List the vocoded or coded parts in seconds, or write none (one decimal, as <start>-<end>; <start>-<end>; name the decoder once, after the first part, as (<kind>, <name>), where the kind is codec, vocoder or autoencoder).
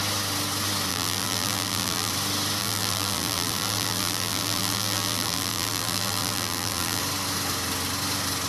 0.9-2.1 (vocoder, BigVGAN v2); 2.6-7.0